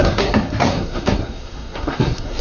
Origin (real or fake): fake